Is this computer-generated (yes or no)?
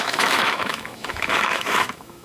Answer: yes